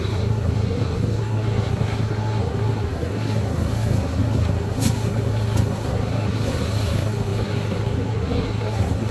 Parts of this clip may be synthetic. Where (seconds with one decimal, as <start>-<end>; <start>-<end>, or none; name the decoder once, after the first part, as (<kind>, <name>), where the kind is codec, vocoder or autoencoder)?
0.0-9.1 (codec, SNAC)